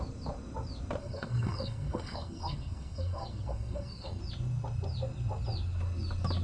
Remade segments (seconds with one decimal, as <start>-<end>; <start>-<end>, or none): 1.0-4.2